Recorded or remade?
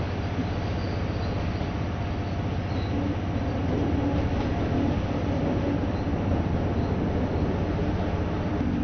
recorded